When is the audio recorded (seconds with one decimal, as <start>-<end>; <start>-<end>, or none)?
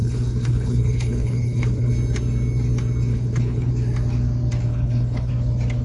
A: 1.9-3.1; 3.7-4.7; 5.3-5.8